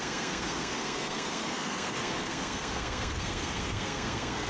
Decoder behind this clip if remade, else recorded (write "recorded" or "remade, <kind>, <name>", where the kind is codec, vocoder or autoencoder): remade, codec, SNAC